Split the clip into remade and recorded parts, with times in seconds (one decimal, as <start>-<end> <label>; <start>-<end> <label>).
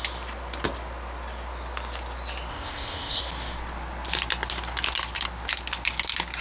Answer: 0.0-2.5 recorded; 2.5-3.2 remade; 3.2-6.4 recorded